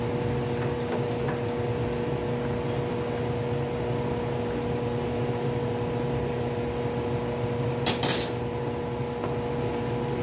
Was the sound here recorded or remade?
recorded